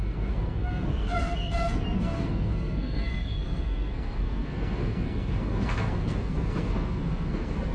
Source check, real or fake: fake